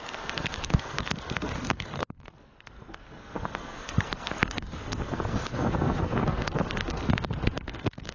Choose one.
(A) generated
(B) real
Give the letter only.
A